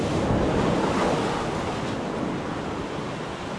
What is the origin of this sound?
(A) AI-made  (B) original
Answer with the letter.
B